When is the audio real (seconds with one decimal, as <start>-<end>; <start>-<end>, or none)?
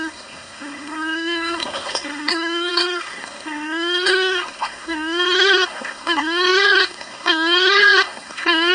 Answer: none